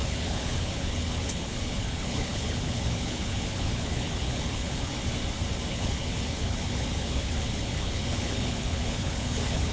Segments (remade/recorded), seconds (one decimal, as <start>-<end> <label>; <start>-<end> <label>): 0.0-4.9 remade; 4.9-5.7 recorded; 5.7-9.7 remade